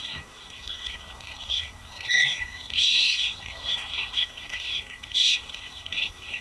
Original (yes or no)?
no